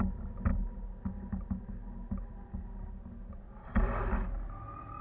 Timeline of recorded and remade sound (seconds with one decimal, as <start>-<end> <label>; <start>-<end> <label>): 0.0-5.0 recorded